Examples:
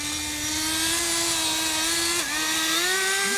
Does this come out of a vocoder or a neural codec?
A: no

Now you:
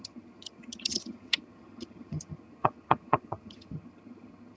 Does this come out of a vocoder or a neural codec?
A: yes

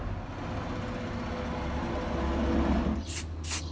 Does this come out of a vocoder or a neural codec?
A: no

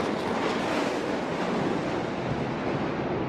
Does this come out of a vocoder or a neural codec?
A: no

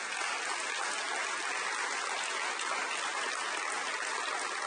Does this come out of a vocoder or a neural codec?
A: no